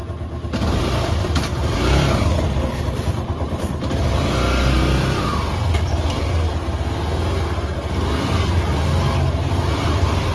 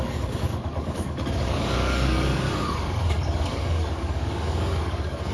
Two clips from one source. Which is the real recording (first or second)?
first